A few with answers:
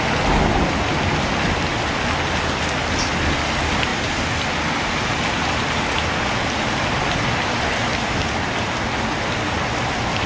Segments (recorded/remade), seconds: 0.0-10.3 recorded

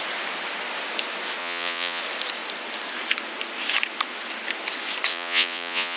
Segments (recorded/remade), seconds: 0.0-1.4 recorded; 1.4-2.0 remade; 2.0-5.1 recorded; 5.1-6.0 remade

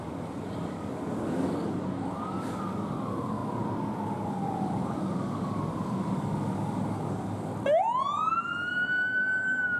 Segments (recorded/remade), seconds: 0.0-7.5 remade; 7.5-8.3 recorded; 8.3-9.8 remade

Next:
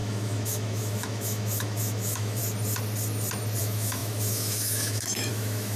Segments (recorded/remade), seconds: 0.0-2.4 remade; 2.4-3.6 recorded; 3.6-5.8 remade

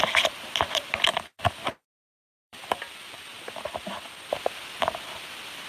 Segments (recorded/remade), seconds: 0.0-1.1 recorded; 1.1-4.3 remade; 4.3-5.7 recorded

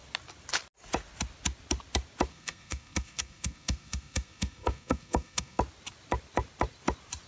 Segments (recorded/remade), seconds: 0.0-2.3 recorded; 2.3-5.6 remade; 5.6-7.3 recorded